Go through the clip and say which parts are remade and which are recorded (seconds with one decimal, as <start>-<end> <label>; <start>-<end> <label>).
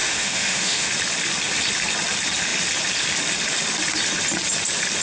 0.0-0.9 remade; 0.9-5.0 recorded